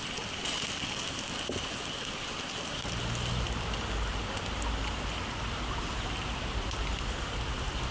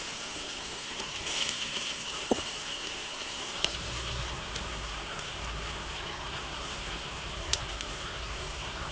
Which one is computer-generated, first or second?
second